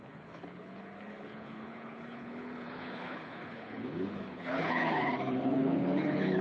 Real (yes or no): no